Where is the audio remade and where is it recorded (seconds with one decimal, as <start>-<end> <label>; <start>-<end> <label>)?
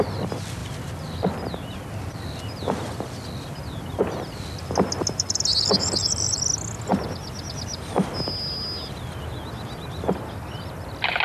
0.0-0.6 recorded; 0.6-4.7 remade; 4.7-11.2 recorded